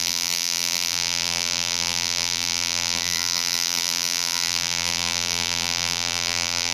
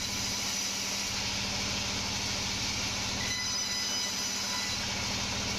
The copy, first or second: first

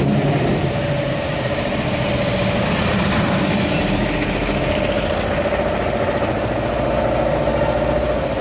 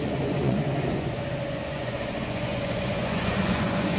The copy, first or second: second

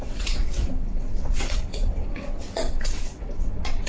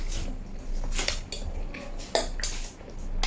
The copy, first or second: first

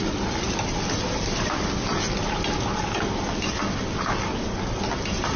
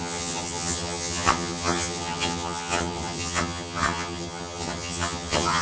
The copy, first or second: second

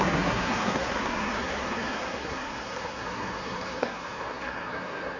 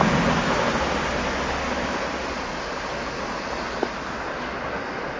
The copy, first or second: first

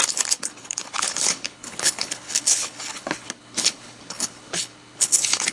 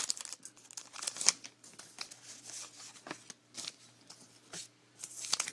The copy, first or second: first